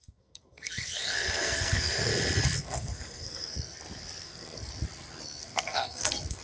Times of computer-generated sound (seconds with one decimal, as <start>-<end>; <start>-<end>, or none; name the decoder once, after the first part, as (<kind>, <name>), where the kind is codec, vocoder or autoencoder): 0.0-2.1 (codec, SNAC); 2.6-3.7; 4.2-4.7; 5.4-6.4